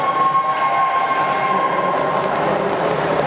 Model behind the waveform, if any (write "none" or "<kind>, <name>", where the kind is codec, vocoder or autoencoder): none